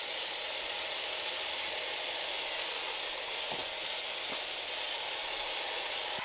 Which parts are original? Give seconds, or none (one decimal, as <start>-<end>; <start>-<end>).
0.0-6.2